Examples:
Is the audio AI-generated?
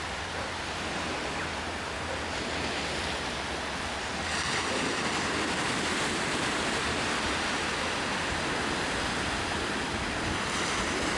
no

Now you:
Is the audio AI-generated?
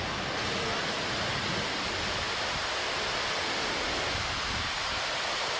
no